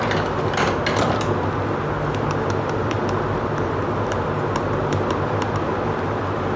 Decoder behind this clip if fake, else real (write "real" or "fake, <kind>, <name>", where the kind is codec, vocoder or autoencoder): real